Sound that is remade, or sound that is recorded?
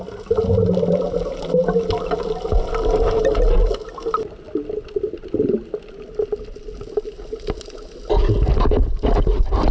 recorded